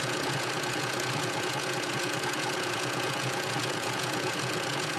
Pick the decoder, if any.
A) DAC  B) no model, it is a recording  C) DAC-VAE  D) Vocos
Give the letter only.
D